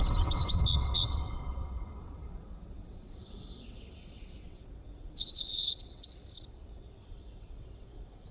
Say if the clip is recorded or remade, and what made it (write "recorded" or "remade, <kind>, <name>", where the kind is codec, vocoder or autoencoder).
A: remade, vocoder, WaveNeXt